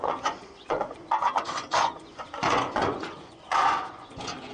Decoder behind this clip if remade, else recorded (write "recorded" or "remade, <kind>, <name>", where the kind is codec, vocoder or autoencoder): remade, vocoder, Vocos